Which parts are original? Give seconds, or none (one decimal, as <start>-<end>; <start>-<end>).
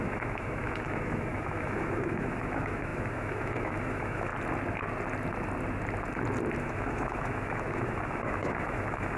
4.3-6.6